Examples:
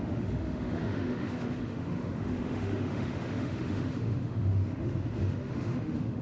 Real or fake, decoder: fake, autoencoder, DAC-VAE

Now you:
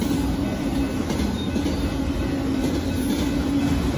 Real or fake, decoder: real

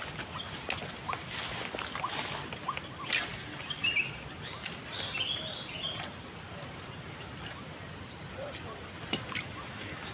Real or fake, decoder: real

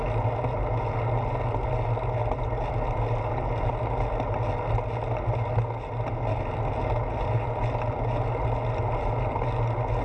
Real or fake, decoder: real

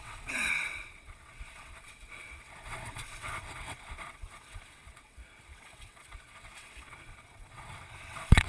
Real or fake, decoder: fake, vocoder, WaveNeXt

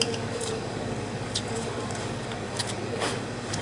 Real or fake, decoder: fake, codec, DAC